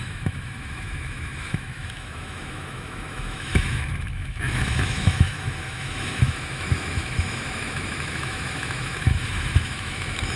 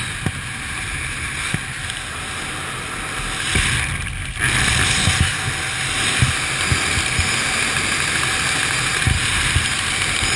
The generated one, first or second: first